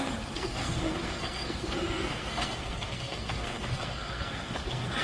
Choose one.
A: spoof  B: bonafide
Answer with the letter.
A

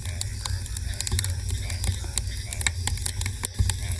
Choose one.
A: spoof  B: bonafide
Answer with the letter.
B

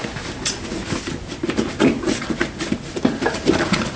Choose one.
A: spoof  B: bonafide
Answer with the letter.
B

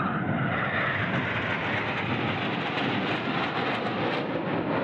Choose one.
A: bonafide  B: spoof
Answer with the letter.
A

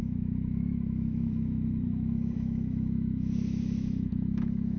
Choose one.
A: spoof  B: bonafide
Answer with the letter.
A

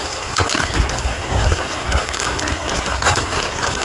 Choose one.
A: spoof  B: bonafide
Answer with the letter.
A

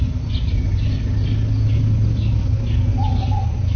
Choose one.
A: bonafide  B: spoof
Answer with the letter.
A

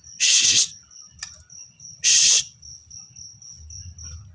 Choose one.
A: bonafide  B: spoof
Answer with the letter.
A